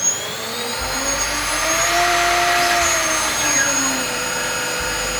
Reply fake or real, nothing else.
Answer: fake